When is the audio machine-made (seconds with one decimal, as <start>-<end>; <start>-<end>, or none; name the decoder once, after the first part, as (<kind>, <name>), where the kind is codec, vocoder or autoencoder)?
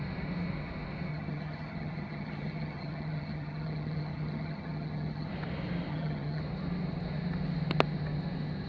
1.1-5.3 (vocoder, HiFi-GAN); 5.9-6.4